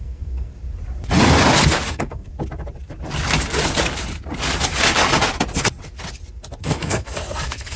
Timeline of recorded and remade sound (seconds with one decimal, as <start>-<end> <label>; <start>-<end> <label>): 0.0-0.5 remade; 0.5-1.9 recorded; 1.9-2.3 remade; 2.3-6.6 recorded; 6.6-7.8 remade